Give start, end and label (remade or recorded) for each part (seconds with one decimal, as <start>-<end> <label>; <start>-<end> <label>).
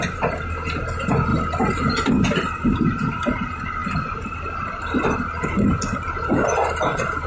0.0-7.3 recorded